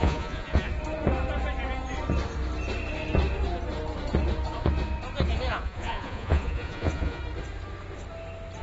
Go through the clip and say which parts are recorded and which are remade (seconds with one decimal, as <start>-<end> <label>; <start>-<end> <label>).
0.0-0.7 remade; 0.7-5.5 recorded; 5.5-7.2 remade; 7.2-8.6 recorded